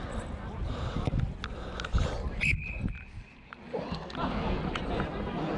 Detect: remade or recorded recorded